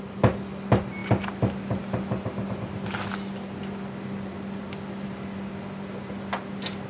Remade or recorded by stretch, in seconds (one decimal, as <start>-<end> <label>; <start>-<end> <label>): 0.0-6.9 recorded